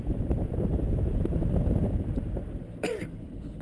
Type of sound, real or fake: fake